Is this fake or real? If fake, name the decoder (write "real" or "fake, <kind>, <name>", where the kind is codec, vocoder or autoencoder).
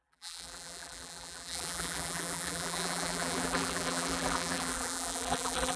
fake, vocoder, BigVGAN v2